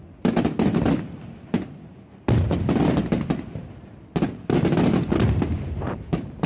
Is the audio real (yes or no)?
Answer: yes